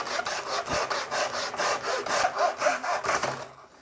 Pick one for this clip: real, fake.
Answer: real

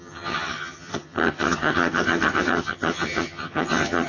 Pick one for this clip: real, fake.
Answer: fake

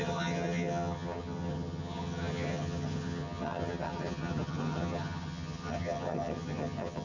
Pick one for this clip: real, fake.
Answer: fake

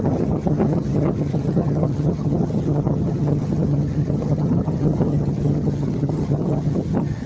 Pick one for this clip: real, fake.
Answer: fake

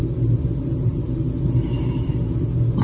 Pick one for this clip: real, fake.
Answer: real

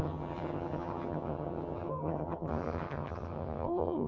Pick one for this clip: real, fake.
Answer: fake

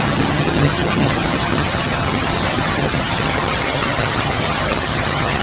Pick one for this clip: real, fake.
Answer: fake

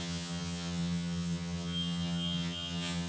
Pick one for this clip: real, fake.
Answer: fake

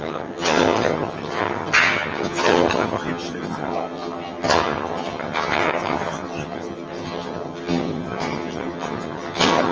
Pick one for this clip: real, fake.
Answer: fake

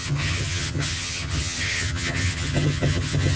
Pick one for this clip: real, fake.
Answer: fake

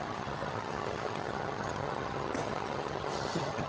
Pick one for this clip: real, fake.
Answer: fake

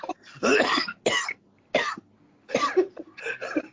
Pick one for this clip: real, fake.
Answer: real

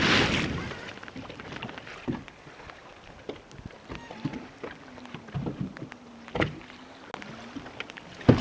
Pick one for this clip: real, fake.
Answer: real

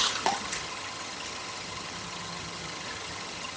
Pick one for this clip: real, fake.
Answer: fake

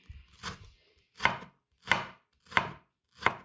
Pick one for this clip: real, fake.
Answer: real